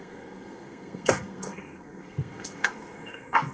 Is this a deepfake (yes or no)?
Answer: yes